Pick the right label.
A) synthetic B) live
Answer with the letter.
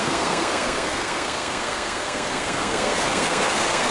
A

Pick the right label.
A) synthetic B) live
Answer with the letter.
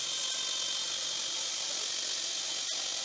B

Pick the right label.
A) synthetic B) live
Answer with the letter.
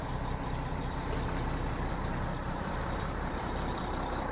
A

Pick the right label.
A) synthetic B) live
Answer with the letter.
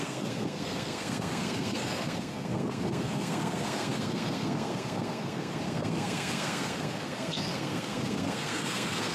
A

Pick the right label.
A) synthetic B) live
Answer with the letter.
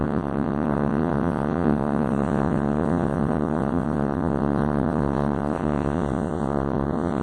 A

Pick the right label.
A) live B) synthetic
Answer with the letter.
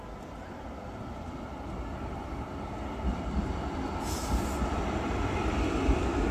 A